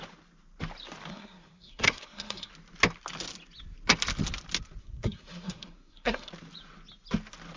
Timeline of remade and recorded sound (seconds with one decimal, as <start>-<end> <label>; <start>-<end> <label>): 0.0-1.1 recorded; 1.1-2.5 remade; 2.5-4.8 recorded; 4.8-6.3 remade; 6.3-7.6 recorded